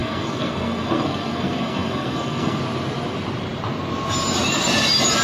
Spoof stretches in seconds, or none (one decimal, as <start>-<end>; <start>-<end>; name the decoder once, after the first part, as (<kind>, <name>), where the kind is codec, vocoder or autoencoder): 0.0-2.6 (codec, SNAC)